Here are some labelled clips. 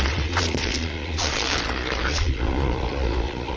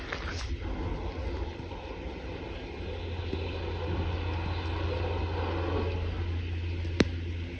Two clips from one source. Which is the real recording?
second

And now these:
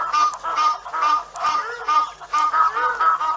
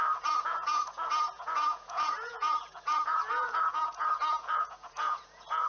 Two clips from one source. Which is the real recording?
first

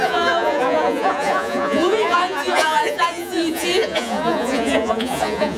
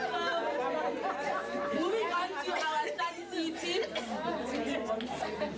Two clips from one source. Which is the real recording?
second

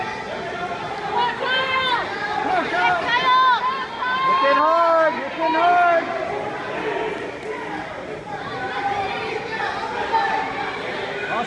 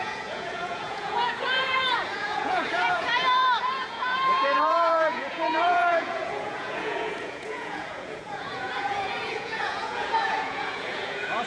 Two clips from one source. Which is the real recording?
first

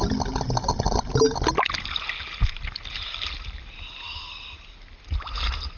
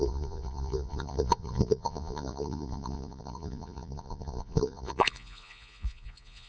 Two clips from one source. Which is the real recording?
first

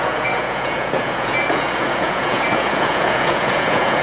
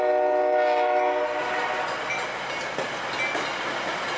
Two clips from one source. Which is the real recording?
second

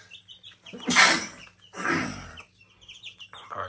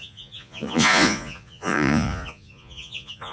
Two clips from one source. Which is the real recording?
first